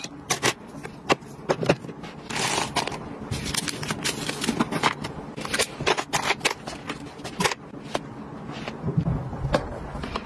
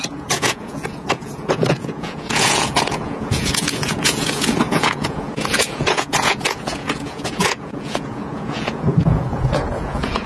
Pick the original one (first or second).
first